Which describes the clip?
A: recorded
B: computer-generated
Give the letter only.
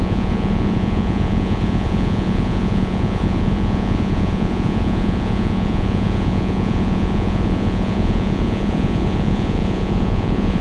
B